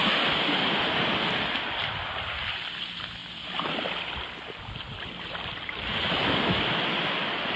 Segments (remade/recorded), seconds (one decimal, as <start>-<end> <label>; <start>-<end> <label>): 0.0-3.2 recorded; 3.2-7.1 remade; 7.1-7.6 recorded